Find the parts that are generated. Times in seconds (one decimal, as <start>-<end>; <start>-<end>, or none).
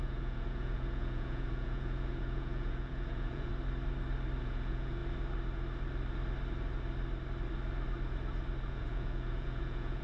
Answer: 0.0-3.5; 4.4-5.0; 8.6-10.0